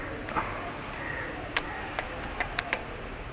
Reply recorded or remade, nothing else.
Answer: recorded